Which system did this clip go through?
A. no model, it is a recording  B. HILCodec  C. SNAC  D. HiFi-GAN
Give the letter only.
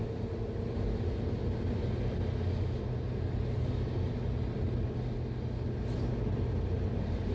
A